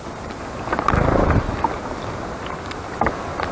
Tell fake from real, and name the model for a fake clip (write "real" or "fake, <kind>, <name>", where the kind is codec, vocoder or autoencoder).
real